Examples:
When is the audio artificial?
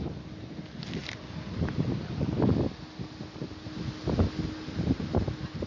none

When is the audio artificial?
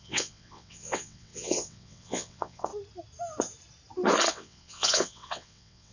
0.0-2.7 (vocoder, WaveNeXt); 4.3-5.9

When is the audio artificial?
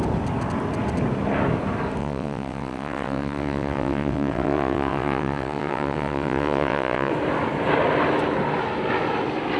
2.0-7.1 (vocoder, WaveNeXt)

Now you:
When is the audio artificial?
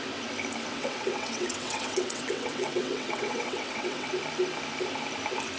0.7-4.1 (vocoder, WaveNeXt)